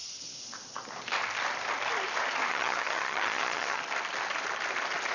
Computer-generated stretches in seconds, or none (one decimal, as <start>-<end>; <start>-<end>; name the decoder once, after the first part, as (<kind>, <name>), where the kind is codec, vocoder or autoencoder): 2.5-3.8 (vocoder, HiFi-GAN)

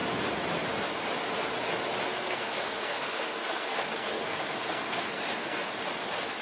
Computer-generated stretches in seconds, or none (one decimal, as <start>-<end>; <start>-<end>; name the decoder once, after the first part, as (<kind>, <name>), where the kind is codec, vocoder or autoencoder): 2.1-5.7 (codec, SNAC)

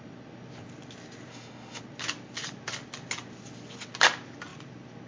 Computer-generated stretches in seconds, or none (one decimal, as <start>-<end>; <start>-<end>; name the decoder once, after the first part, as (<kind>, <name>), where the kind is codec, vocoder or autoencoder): 1.3-1.8 (autoencoder, DAC-VAE)

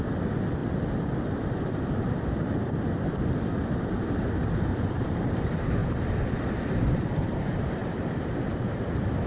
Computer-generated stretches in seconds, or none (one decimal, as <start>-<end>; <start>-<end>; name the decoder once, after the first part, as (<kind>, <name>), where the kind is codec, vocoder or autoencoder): 0.0-0.6 (vocoder, BigVGAN v2); 1.8-5.8; 6.3-9.3

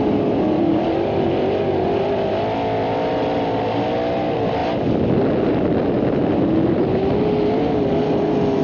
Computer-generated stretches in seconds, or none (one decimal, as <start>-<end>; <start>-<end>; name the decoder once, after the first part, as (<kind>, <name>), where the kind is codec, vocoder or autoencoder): none

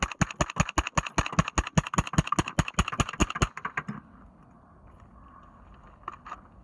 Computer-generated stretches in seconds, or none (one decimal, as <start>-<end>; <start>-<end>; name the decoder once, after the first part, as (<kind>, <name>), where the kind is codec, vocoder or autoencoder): none